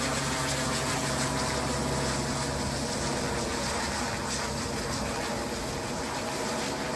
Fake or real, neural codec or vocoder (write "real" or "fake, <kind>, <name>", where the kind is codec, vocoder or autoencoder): real